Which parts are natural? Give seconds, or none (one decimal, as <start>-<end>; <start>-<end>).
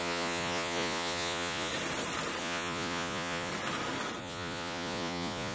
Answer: 1.7-2.4; 3.5-4.2